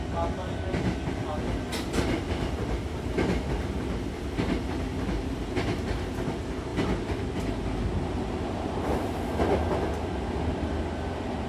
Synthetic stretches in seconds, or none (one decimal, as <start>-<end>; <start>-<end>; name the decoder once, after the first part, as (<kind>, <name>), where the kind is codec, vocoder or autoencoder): none